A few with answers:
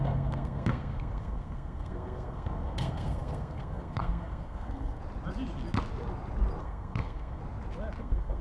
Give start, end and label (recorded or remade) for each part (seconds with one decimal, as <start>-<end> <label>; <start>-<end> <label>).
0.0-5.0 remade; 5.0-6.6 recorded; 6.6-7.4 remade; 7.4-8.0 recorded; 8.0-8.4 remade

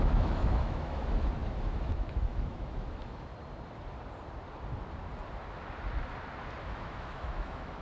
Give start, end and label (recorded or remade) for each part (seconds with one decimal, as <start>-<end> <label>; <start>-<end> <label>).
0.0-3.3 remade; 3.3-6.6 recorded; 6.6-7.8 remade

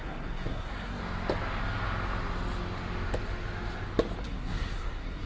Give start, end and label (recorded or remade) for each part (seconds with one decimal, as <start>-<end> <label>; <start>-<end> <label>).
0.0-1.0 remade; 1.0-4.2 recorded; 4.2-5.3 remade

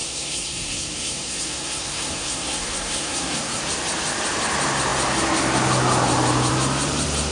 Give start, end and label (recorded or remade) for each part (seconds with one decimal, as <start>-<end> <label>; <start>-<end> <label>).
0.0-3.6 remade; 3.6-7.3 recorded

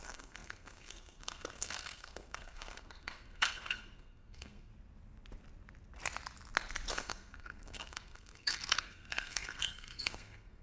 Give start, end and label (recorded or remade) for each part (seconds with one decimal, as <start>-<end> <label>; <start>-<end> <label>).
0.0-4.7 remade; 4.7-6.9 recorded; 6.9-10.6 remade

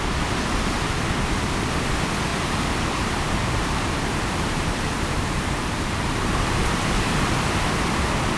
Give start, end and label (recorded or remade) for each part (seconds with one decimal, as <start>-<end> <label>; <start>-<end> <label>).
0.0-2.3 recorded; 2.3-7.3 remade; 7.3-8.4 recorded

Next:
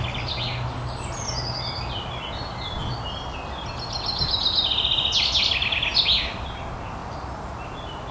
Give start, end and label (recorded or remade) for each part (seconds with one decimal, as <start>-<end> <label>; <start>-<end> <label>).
0.0-8.1 recorded